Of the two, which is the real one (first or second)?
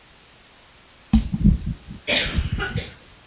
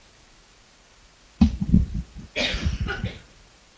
first